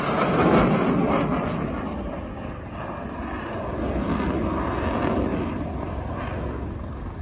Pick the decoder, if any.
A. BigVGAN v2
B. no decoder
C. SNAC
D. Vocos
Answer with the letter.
B